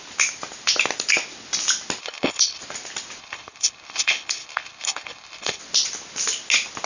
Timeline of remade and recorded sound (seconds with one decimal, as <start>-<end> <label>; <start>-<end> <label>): 0.0-2.0 recorded; 2.0-2.6 remade; 2.6-3.2 recorded; 3.2-5.6 remade; 5.6-6.9 recorded

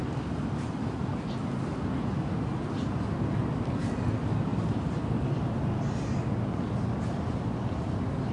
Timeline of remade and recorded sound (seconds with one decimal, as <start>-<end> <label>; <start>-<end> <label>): 0.0-8.3 recorded

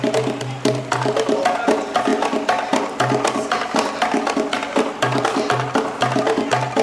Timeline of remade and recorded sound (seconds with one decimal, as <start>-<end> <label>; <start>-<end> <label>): 0.0-6.8 recorded